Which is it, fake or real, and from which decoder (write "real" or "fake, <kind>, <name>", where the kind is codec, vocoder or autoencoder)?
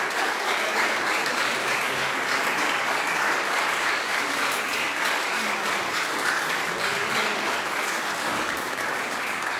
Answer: fake, codec, DAC